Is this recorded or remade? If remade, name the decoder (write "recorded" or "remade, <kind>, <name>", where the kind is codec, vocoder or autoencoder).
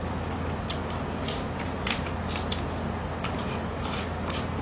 recorded